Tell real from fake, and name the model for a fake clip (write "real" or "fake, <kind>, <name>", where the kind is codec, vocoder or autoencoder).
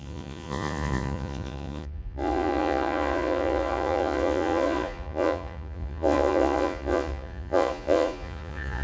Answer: fake, vocoder, Vocos